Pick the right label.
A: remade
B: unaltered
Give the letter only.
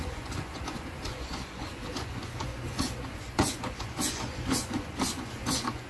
A